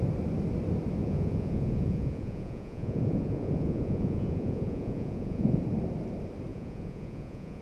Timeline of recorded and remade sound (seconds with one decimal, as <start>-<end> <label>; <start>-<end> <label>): 0.0-1.0 recorded; 1.0-5.6 remade; 5.6-6.5 recorded; 6.5-7.6 remade